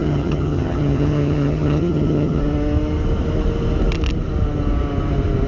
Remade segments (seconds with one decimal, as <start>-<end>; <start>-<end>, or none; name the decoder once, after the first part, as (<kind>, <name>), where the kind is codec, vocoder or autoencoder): 0.0-2.4 (vocoder, HiFi-GAN)